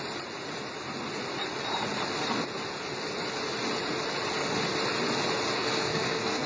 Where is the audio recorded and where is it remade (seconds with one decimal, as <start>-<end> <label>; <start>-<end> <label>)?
0.0-5.5 recorded; 5.5-6.5 remade